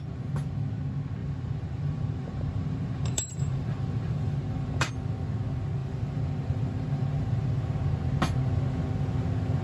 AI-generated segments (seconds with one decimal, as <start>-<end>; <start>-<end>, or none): 1.2-4.9; 5.8-7.4